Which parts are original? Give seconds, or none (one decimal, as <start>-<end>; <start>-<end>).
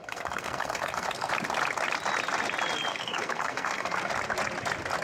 1.3-2.9; 4.1-5.0